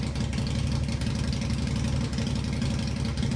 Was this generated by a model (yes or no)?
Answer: no